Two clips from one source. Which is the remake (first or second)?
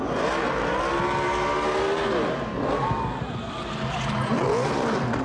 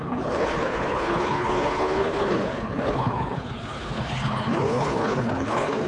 second